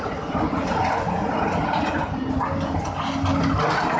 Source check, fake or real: real